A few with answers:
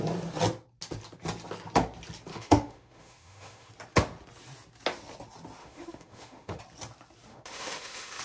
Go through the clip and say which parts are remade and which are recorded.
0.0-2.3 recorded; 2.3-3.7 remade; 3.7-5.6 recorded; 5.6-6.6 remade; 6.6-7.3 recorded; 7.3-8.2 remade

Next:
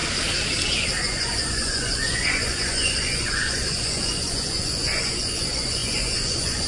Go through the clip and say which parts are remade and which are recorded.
0.0-1.0 recorded; 1.0-6.7 remade